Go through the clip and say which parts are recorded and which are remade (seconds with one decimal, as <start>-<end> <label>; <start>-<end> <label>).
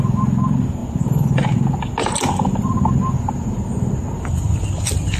0.0-5.2 recorded